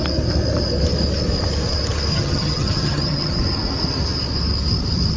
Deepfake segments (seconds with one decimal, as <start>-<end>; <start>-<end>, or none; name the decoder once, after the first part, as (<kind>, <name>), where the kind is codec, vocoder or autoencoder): 2.1-3.4 (vocoder, HiFi-GAN)